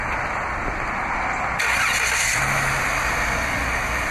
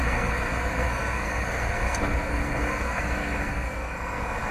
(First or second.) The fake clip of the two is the second